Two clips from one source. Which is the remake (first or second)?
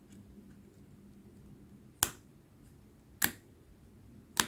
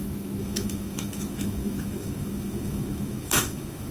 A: second